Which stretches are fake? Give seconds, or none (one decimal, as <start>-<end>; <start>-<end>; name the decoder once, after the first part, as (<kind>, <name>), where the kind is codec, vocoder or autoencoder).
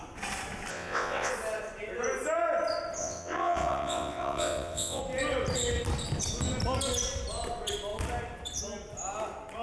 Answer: 0.7-1.3 (vocoder, WaveNeXt); 3.0-5.0